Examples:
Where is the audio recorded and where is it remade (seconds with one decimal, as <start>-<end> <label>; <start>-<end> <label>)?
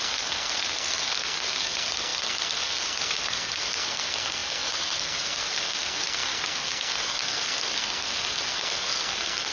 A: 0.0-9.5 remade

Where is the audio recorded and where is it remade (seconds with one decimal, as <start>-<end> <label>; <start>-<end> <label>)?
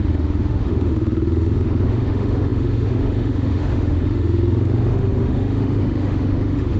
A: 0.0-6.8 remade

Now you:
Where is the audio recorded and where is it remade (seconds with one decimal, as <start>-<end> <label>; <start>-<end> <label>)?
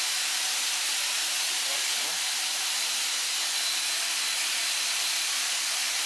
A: 0.0-6.1 recorded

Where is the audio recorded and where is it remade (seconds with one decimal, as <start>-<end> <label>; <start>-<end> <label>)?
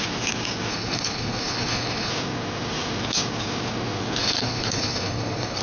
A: 0.0-0.7 recorded; 0.7-2.1 remade; 2.1-4.2 recorded; 4.2-5.6 remade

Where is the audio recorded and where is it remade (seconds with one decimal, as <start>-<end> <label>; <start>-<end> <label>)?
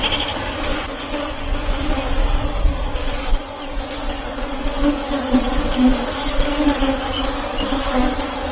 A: 0.0-0.7 recorded; 0.7-1.8 remade; 1.8-3.0 recorded; 3.0-5.3 remade; 5.3-8.5 recorded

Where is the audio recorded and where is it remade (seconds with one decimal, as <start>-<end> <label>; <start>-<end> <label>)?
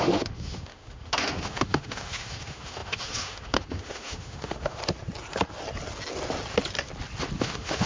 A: 0.0-4.8 remade; 4.8-7.4 recorded; 7.4-7.9 remade